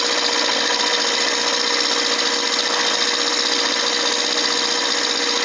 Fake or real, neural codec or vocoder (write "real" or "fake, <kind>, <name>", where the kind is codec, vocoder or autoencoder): real